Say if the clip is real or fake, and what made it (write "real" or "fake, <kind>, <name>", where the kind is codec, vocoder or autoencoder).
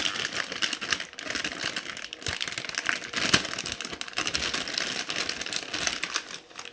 real